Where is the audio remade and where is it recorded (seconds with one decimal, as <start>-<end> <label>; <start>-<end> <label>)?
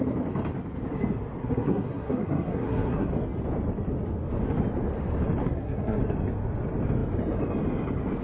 0.0-1.4 recorded; 1.4-3.1 remade; 3.1-5.4 recorded; 5.4-6.0 remade; 6.0-8.2 recorded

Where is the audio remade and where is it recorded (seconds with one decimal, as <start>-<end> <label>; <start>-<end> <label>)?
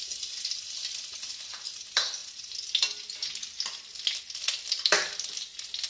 0.0-5.9 recorded